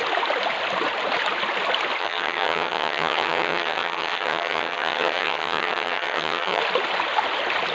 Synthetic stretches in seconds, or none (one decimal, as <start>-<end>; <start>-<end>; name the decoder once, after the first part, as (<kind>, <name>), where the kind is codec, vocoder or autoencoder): 2.0-6.6 (vocoder, HiFi-GAN)